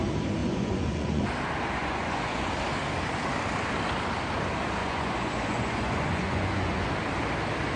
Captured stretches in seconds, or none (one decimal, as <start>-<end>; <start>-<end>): 0.0-0.4; 1.3-1.8; 2.5-4.8; 6.9-7.8